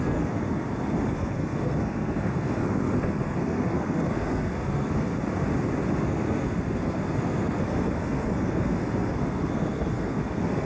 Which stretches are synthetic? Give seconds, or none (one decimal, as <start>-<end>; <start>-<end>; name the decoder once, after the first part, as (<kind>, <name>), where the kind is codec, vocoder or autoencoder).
0.0-5.1 (codec, SNAC); 6.0-10.7